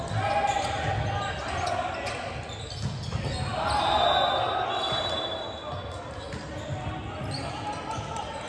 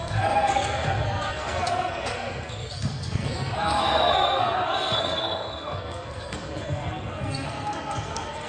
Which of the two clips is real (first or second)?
first